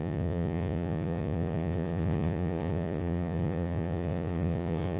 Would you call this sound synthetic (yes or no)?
yes